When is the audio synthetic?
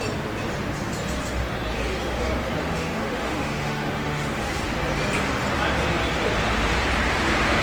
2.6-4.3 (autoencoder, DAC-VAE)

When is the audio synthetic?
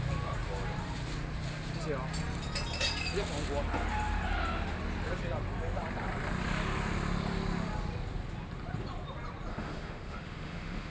9.5-10.9 (autoencoder, DAC-VAE)